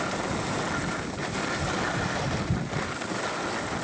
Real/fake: real